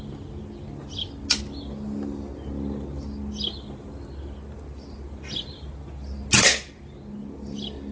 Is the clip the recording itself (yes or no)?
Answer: yes